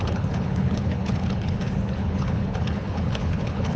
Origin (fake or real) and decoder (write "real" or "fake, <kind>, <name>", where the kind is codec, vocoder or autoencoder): fake, codec, HILCodec